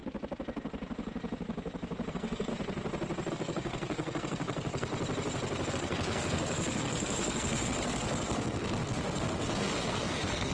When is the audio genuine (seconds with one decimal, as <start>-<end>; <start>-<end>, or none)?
0.0-2.1; 2.5-3.3; 4.9-5.7